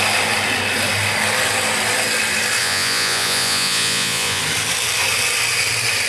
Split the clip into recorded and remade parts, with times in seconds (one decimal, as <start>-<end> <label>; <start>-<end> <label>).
0.0-2.6 recorded; 2.6-4.4 remade; 4.4-6.1 recorded